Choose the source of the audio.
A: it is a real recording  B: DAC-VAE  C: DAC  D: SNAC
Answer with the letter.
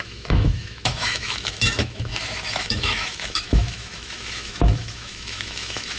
B